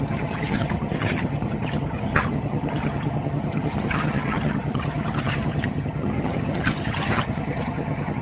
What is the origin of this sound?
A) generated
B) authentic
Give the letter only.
A